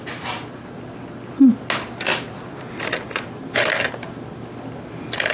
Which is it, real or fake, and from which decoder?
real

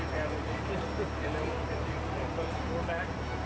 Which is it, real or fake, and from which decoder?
real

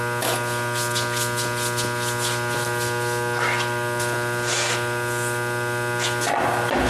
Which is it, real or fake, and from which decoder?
real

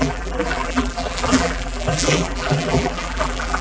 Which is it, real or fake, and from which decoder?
fake, vocoder, BigVGAN v2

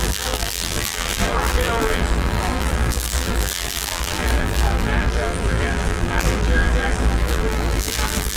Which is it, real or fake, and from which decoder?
fake, vocoder, BigVGAN v2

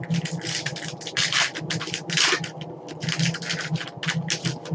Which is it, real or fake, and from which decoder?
real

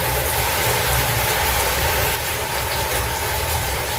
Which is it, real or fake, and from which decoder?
real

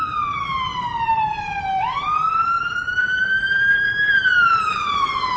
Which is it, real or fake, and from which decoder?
fake, vocoder, BigVGAN v2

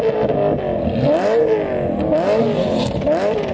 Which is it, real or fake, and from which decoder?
real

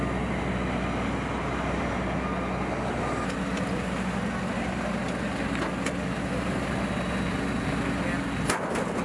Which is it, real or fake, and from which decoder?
real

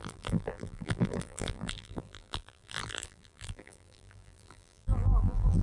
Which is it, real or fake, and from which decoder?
fake, vocoder, BigVGAN v2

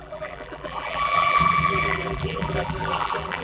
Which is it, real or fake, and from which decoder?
fake, vocoder, BigVGAN v2